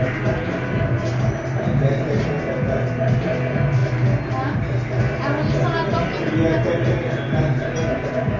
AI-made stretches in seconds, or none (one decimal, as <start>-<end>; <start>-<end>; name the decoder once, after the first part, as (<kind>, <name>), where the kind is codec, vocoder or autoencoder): none